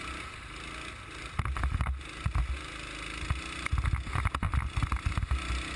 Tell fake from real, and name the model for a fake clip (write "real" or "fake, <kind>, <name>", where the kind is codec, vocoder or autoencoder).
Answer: real